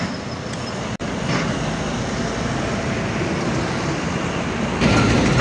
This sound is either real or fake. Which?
real